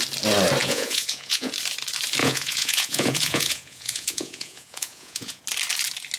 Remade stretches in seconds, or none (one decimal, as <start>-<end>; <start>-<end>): 0.6-1.5; 2.2-5.4

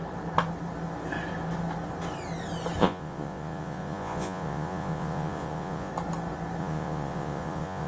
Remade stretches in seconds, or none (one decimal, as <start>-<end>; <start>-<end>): 2.8-5.9; 6.6-7.9

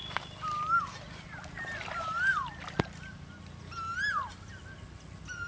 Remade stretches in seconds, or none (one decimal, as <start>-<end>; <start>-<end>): none

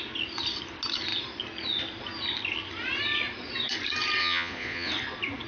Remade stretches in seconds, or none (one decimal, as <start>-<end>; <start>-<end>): 4.2-4.9

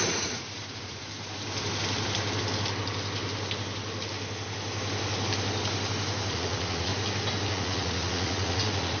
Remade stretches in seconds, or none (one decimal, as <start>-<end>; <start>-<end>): 0.0-1.1; 6.3-6.9; 7.5-9.0

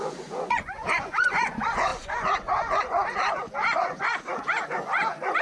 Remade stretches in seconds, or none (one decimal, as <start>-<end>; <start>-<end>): 0.0-5.4